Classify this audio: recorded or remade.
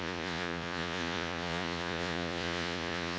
remade